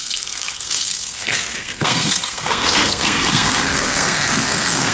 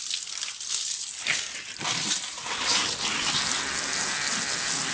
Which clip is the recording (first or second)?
second